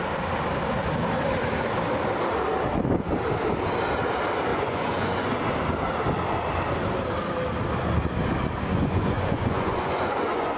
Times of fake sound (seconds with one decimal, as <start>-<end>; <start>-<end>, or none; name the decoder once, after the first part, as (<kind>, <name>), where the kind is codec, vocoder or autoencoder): 4.5-5.3 (vocoder, Vocos); 8.7-10.6